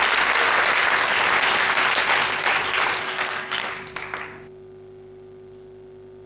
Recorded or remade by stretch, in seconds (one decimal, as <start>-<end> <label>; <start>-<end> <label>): 0.0-3.0 recorded; 3.0-3.7 remade; 3.7-6.3 recorded